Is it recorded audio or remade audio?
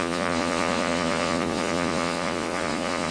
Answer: remade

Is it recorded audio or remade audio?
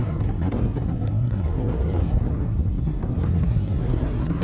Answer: remade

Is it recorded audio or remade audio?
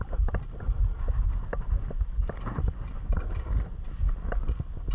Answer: recorded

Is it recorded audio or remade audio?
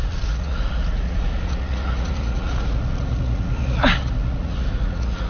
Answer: remade